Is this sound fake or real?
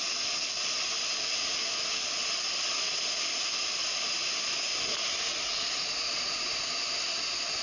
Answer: real